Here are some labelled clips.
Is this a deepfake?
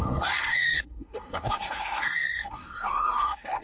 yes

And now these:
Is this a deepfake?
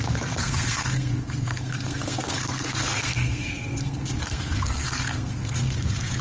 yes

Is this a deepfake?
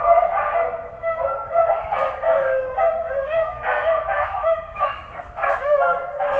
yes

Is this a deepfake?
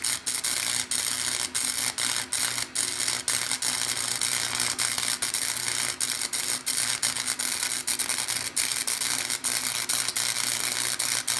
no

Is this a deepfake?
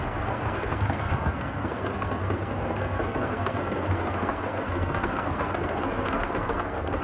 yes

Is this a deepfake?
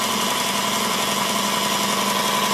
no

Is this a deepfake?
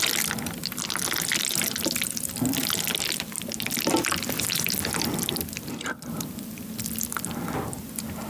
no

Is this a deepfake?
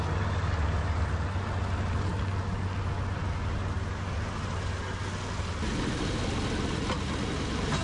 no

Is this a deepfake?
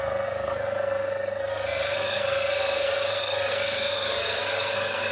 yes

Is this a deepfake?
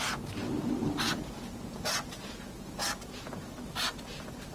no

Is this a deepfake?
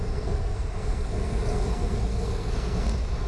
yes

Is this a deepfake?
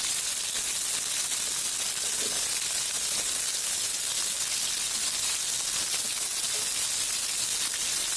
no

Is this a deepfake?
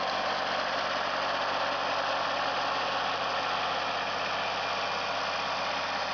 no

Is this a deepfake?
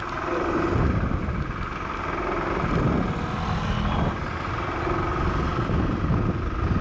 no